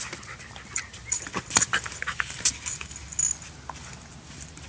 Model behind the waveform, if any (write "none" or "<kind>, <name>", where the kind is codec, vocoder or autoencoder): none